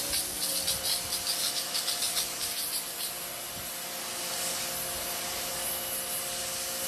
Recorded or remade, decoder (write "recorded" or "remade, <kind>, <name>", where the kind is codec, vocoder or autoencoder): recorded